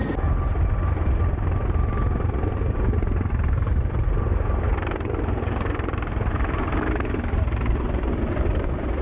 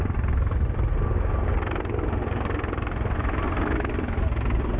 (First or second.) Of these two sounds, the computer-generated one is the first